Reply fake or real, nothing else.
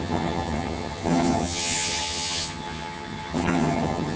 fake